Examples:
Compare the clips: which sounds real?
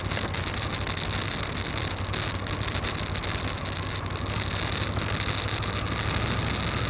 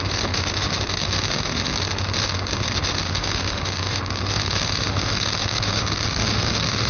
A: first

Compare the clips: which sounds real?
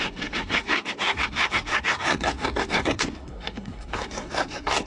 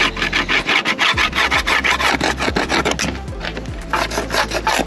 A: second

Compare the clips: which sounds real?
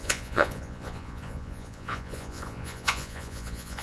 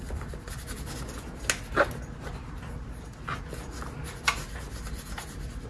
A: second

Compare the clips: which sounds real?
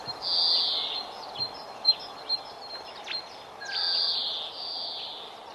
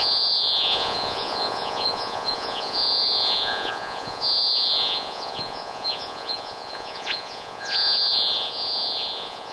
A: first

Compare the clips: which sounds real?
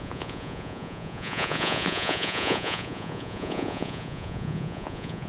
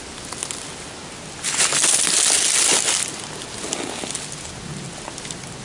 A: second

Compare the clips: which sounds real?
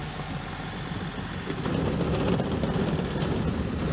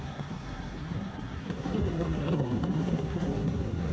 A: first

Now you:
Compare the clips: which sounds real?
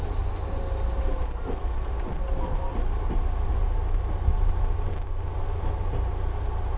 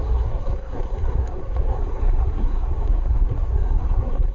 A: first